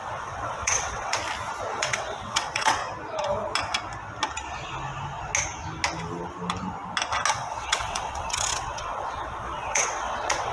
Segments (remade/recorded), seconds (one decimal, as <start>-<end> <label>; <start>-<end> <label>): 0.0-1.2 remade; 1.2-1.8 recorded; 1.8-2.8 remade; 2.8-7.3 recorded; 7.3-10.5 remade